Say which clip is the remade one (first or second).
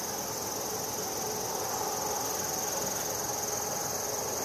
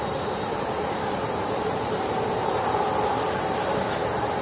second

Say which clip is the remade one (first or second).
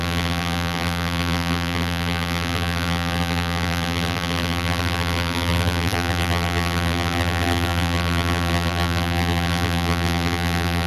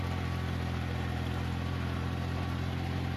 first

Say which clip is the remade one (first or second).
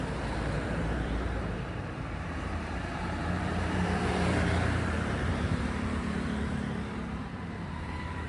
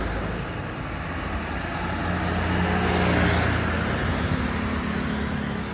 first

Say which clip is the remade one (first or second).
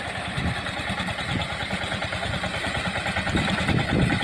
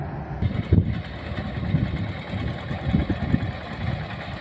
first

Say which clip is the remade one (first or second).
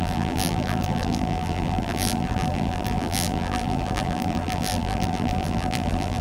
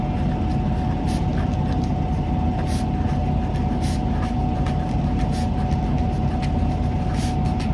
first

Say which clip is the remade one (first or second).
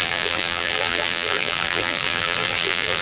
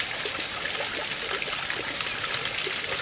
first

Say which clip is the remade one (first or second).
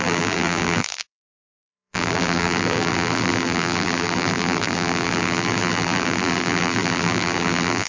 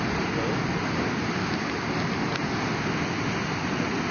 first